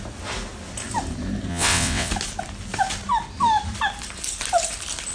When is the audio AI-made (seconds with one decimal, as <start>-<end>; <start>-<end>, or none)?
1.5-2.1

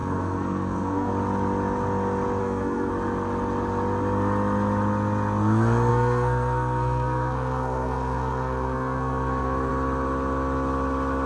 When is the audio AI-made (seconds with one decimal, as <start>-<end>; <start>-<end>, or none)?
0.0-1.1; 2.4-2.9; 5.9-9.7